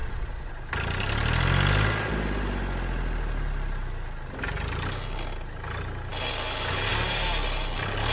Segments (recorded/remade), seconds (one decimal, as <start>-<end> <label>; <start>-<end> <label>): 0.0-0.5 remade; 0.5-8.1 recorded